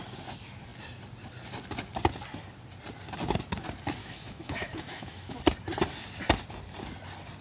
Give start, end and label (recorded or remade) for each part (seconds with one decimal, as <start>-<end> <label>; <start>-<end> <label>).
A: 0.0-4.0 recorded; 4.0-5.4 remade; 5.4-7.4 recorded